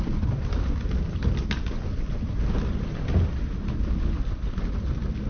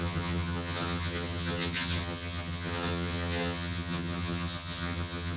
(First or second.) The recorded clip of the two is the first